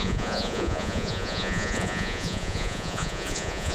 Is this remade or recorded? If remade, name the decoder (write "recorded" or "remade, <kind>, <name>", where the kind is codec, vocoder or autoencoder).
remade, vocoder, Vocos